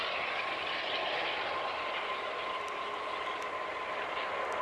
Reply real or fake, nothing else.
real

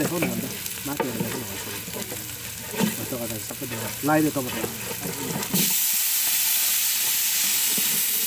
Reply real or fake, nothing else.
real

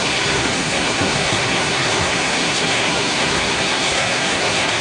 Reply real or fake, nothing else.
fake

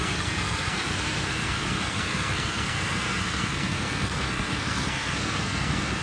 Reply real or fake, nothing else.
fake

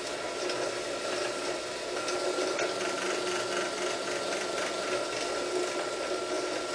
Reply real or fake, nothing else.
real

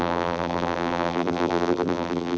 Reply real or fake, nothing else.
fake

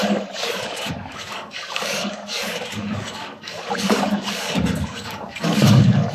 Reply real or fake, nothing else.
fake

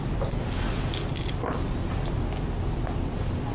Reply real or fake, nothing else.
real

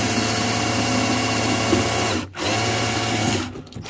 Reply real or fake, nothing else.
real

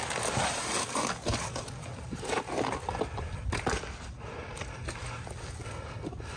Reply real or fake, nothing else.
real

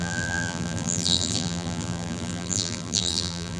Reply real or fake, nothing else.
fake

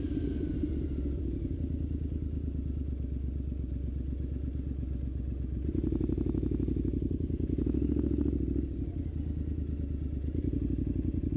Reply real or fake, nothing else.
real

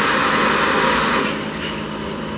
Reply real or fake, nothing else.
real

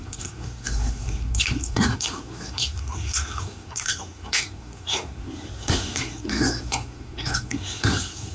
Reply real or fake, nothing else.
fake